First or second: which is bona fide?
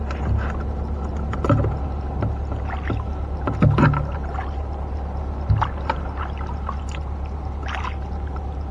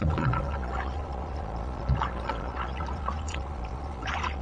first